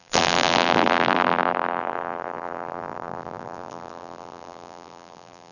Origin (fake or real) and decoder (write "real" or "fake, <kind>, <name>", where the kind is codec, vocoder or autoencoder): fake, vocoder, BigVGAN v2